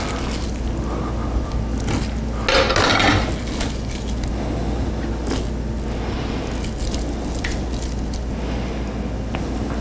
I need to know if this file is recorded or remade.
recorded